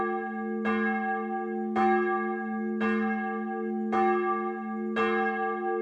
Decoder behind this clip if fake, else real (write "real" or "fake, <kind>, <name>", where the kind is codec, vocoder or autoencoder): real